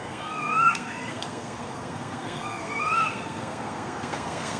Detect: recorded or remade remade